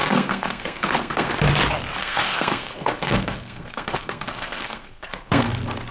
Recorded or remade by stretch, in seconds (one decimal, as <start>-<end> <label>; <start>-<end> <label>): 0.0-1.3 remade; 1.3-2.0 recorded; 2.0-5.5 remade; 5.5-5.9 recorded